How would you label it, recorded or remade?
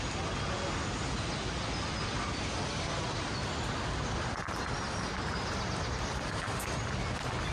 recorded